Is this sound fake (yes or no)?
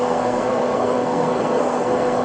yes